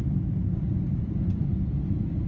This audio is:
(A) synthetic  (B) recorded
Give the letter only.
B